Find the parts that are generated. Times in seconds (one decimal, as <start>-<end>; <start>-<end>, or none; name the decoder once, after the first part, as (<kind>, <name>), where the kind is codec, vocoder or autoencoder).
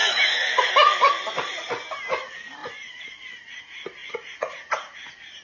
0.0-0.7 (vocoder, Vocos); 2.6-3.6; 4.0-4.7